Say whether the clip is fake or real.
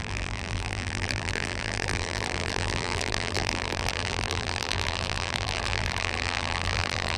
fake